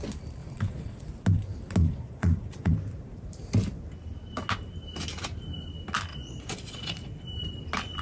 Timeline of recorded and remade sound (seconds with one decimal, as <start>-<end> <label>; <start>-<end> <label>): 0.0-0.4 recorded; 0.4-1.0 remade; 1.0-1.8 recorded; 1.8-2.7 remade; 2.7-6.1 recorded; 6.1-7.2 remade; 7.2-8.0 recorded